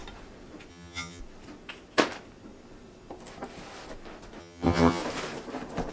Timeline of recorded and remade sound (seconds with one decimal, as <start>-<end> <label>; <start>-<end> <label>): 0.0-0.7 recorded; 0.7-1.2 remade; 1.2-4.4 recorded; 4.4-5.0 remade; 5.0-5.9 recorded